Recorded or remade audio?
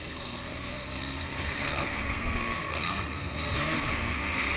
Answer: remade